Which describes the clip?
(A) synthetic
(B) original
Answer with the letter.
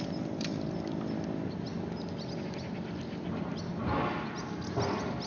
B